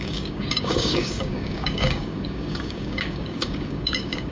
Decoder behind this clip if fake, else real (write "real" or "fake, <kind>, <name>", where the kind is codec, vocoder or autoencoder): fake, codec, DAC